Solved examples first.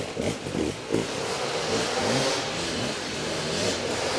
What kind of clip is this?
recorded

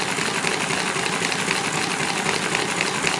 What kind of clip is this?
recorded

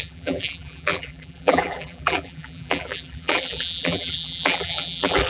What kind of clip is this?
remade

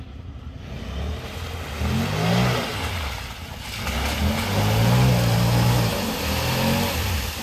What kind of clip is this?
recorded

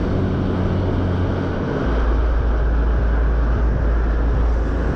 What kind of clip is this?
recorded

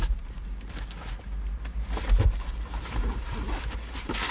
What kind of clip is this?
recorded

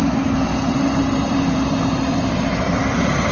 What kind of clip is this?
recorded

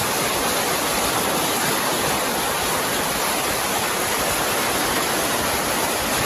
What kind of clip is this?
recorded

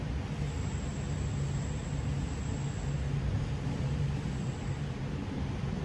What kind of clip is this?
recorded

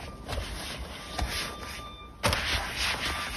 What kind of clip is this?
recorded